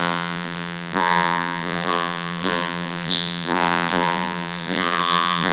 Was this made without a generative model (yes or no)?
no